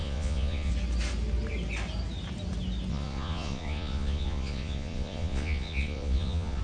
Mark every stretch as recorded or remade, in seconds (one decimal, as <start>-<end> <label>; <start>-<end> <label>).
0.0-0.7 remade; 0.7-2.9 recorded; 2.9-6.6 remade